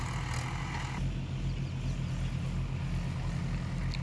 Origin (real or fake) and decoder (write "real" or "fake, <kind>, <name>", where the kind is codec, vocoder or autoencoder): real